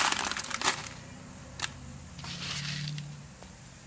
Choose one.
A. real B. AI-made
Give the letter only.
A